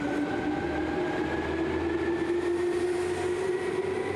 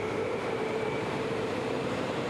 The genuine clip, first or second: first